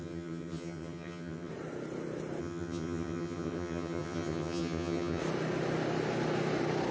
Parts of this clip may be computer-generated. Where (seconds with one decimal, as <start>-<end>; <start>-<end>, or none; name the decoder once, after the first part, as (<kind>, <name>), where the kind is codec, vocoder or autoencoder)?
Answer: 0.0-1.5 (vocoder, HiFi-GAN); 2.4-5.2